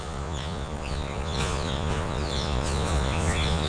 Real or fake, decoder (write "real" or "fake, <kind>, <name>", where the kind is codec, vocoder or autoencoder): fake, vocoder, Vocos